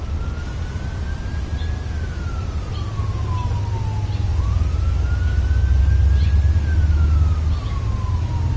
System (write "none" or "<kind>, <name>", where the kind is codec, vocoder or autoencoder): none